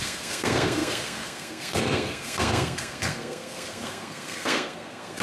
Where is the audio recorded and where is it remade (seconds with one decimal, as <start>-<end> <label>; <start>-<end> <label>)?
0.0-5.2 remade